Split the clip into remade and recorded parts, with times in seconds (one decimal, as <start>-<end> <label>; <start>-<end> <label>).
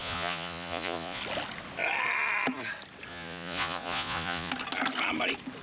0.0-1.2 remade; 1.2-3.1 recorded; 3.1-4.5 remade; 4.5-5.6 recorded